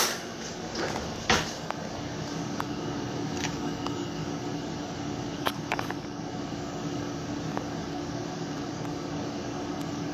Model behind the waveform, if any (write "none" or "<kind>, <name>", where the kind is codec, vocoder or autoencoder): codec, DAC